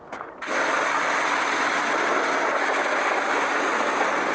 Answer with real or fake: real